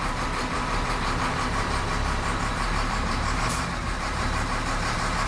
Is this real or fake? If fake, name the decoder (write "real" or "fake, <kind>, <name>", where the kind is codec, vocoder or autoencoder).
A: fake, vocoder, BigVGAN v2